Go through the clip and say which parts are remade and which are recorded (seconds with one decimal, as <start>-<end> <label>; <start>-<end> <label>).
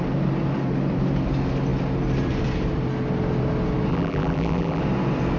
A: 0.0-3.9 recorded; 3.9-4.8 remade; 4.8-5.4 recorded